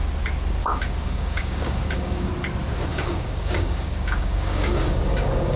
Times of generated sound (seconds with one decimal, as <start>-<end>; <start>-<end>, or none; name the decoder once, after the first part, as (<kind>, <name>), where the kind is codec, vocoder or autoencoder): 0.6-2.3 (codec, DAC); 2.9-5.6

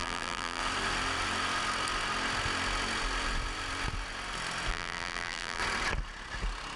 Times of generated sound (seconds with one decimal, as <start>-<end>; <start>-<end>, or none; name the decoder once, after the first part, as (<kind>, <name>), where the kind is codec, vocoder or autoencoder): 0.0-0.6 (vocoder, BigVGAN v2); 4.7-5.6

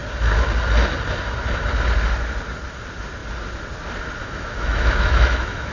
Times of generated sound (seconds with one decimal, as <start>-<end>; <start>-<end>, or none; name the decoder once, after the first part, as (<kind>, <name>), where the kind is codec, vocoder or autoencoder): 4.2-5.7 (autoencoder, DAC-VAE)

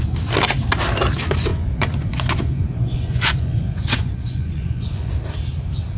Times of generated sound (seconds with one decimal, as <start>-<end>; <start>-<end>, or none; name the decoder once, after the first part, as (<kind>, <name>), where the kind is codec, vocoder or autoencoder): 1.5-5.1 (vocoder, Vocos)

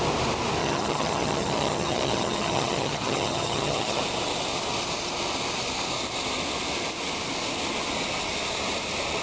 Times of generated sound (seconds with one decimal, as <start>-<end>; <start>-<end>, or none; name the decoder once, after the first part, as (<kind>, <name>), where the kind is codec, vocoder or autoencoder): 0.6-4.0 (vocoder, HiFi-GAN)